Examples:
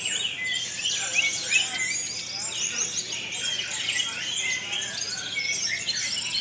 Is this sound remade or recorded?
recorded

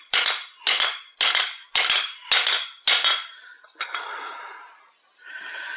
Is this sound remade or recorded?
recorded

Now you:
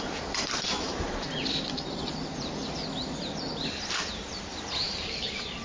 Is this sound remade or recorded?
remade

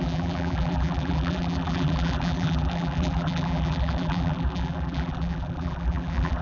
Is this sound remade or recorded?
remade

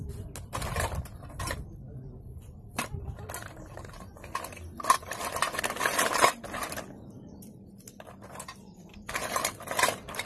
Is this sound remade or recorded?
recorded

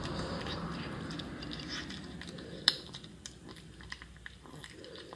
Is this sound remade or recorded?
recorded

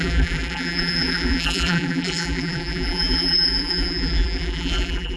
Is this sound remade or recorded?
remade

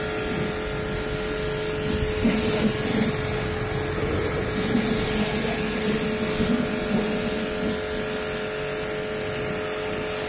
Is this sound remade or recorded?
recorded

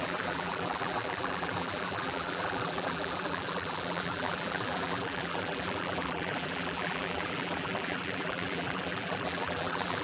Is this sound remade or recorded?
remade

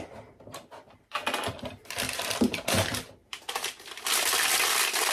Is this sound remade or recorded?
remade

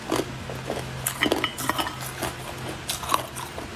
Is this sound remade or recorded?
recorded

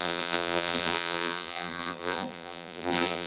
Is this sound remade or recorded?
remade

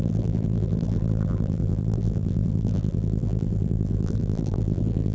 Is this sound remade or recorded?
remade